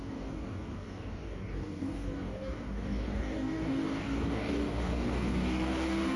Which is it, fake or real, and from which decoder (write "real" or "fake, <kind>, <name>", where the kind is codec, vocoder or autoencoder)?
fake, codec, DAC